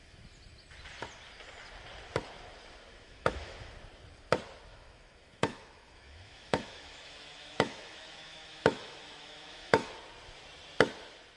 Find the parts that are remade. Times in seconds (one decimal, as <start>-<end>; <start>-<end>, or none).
2.9-3.7; 4.7-9.9

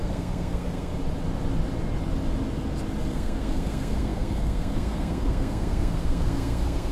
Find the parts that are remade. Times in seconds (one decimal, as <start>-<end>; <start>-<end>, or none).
0.0-0.9; 3.1-6.9